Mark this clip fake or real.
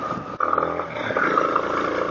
real